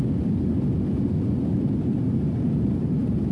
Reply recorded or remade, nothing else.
remade